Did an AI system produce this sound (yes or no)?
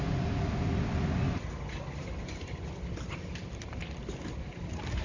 no